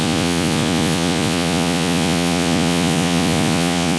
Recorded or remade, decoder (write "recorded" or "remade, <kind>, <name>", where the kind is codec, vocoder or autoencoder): remade, vocoder, Vocos